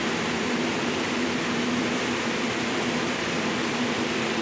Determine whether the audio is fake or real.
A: fake